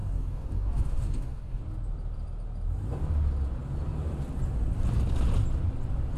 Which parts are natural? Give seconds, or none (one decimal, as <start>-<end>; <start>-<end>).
1.6-6.2